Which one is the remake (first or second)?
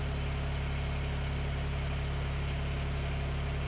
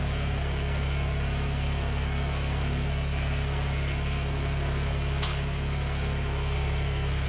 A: second